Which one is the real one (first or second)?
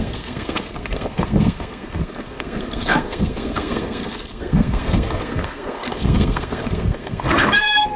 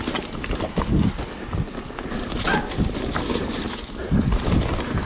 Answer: second